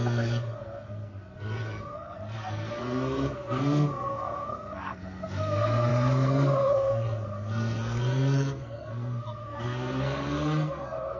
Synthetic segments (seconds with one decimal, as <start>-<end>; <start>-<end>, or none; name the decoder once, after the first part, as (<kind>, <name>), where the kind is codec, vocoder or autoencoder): 0.0-11.2 (codec, SNAC)